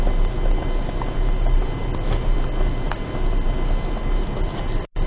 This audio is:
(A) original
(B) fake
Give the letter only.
A